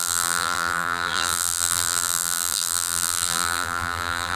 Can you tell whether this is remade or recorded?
remade